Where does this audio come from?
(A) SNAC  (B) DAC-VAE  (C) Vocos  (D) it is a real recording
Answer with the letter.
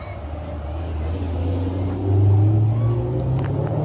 D